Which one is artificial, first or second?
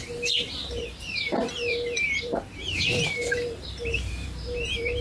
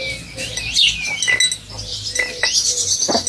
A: first